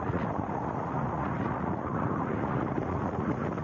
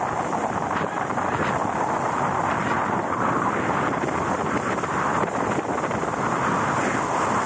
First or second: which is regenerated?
first